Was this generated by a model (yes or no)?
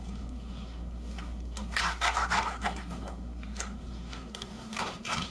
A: yes